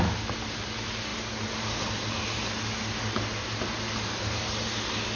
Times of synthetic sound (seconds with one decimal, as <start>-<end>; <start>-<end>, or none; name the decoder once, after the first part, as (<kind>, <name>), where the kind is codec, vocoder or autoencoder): none